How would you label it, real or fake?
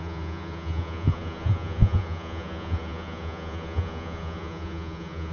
fake